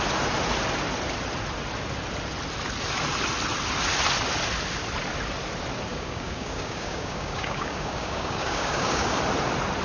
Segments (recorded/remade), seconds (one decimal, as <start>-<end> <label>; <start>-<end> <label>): 0.0-5.9 recorded; 5.9-9.2 remade; 9.2-9.8 recorded